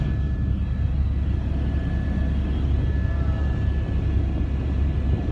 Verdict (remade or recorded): recorded